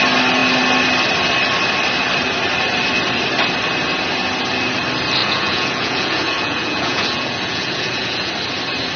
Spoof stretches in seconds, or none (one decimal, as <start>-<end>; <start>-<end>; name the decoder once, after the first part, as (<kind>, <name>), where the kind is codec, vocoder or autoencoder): 5.2-8.3 (vocoder, Vocos)